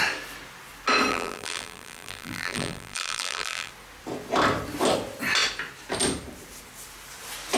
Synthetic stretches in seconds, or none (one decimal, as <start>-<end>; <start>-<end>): 1.1-3.7